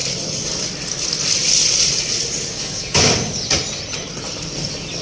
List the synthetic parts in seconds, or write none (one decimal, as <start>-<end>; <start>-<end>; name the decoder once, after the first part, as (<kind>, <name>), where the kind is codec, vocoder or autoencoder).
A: 2.6-3.1 (autoencoder, DAC-VAE)